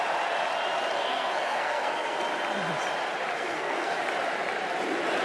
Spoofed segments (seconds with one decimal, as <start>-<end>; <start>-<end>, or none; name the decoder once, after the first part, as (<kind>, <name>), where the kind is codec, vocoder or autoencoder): 1.0-2.2 (codec, SNAC); 3.3-4.0